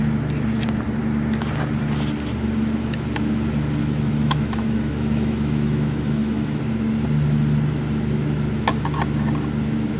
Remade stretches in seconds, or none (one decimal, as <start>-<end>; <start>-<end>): 3.8-6.6

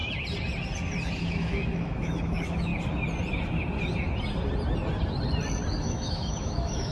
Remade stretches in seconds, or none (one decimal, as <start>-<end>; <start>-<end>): 1.2-2.7; 5.8-6.9